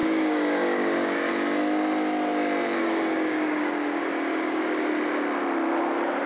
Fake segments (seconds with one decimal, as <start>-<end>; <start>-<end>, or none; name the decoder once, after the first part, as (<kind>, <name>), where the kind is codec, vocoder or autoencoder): 0.0-1.3 (codec, DAC); 2.8-4.6